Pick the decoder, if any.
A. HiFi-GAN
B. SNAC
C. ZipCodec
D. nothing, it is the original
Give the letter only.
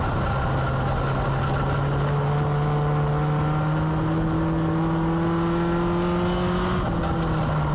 D